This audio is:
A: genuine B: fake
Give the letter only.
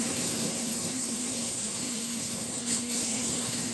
B